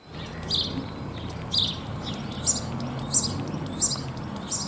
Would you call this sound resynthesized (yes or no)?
no